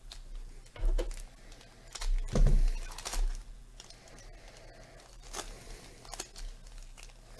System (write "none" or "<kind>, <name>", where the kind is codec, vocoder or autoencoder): none